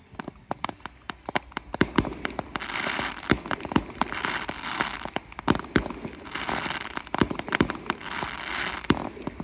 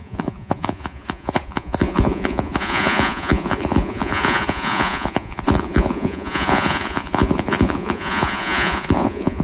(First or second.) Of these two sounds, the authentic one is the first